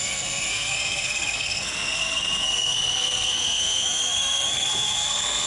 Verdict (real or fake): fake